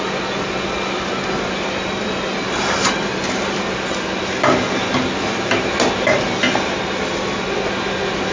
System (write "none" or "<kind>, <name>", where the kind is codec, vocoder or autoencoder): none